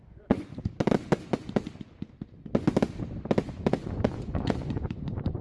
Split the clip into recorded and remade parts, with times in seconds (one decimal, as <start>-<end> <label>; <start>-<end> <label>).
0.0-0.5 remade; 0.5-3.7 recorded; 3.7-5.4 remade